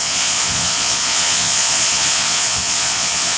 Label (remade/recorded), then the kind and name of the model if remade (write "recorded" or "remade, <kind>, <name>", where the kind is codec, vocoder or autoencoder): remade, vocoder, Vocos